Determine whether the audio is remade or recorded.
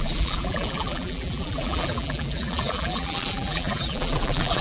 remade